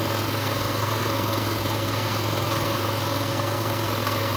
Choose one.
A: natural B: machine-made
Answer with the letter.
B